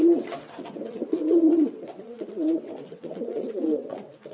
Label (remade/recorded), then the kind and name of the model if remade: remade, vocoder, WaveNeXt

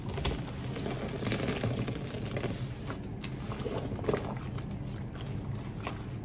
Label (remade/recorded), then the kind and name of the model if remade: recorded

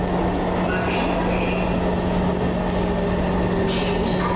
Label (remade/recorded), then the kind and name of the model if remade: recorded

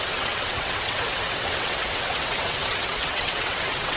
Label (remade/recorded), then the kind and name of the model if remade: remade, vocoder, WaveNeXt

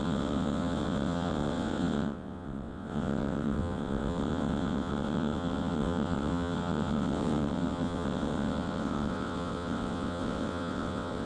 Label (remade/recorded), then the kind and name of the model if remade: remade, vocoder, WaveNeXt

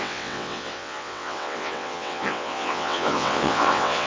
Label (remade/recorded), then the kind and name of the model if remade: remade, vocoder, WaveNeXt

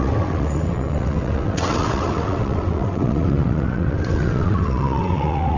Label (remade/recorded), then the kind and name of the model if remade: remade, vocoder, WaveNeXt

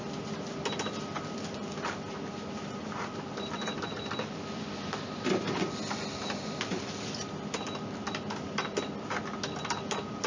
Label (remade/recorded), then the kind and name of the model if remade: recorded